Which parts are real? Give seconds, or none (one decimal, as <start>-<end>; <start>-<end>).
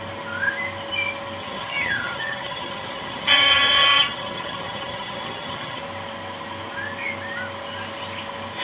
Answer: 0.0-1.4; 5.8-8.6